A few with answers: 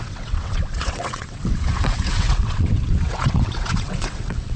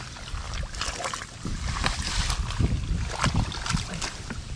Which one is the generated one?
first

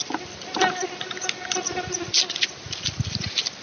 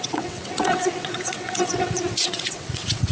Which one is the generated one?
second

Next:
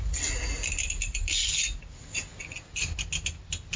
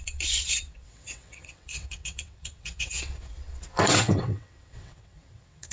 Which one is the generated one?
second